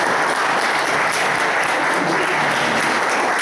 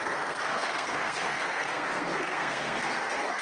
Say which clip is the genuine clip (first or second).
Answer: first